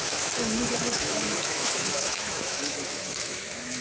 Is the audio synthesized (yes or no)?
yes